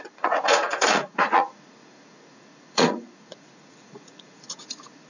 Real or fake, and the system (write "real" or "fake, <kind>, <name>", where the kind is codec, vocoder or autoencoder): fake, vocoder, Vocos